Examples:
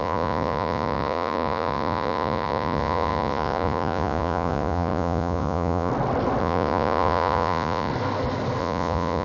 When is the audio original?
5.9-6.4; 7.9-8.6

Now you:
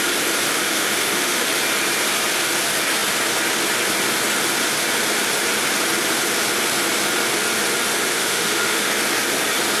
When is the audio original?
0.0-0.5; 1.5-8.1; 8.9-9.8

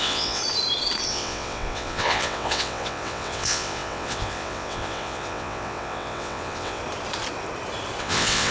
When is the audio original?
0.4-1.1; 6.8-8.0

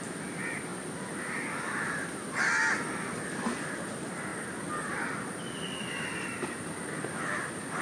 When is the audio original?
0.0-7.8

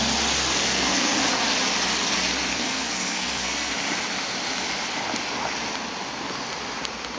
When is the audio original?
0.0-0.6; 1.2-2.5; 3.7-7.2

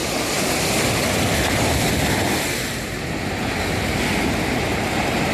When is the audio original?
0.0-5.3

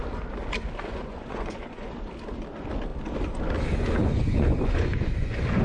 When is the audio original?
0.0-0.9; 1.9-4.0